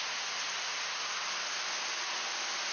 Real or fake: real